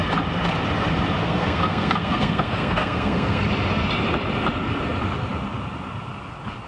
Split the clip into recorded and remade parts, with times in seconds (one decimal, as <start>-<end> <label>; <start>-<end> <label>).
0.0-1.2 recorded; 1.2-3.4 remade; 3.4-6.7 recorded